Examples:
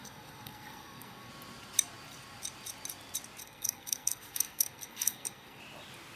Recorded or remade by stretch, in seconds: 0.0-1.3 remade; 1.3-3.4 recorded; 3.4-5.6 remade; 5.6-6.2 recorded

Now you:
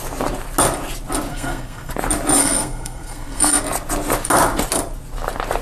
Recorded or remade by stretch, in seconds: 0.0-1.3 recorded; 1.3-1.9 remade; 1.9-2.4 recorded; 2.4-3.6 remade; 3.6-5.6 recorded

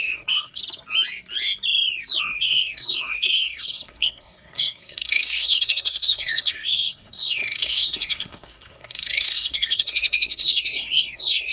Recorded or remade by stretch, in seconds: 0.0-0.6 remade; 0.6-2.2 recorded; 2.2-11.5 remade

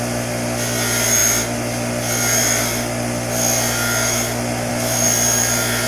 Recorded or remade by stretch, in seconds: 0.0-5.9 recorded

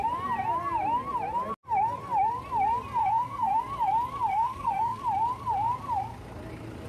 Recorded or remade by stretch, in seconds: 0.0-3.0 recorded; 3.0-3.6 remade; 3.6-4.3 recorded; 4.3-5.0 remade; 5.0-6.9 recorded

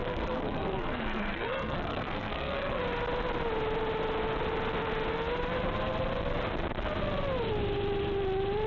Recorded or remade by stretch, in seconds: 0.0-2.8 remade; 2.8-8.7 recorded